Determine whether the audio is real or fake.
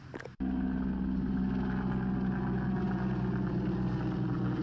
real